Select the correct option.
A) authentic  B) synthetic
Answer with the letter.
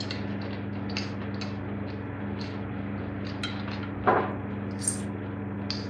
A